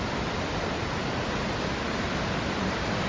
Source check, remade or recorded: recorded